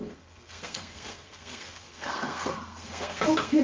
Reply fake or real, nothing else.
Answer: fake